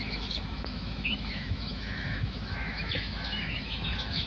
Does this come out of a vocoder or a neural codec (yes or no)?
yes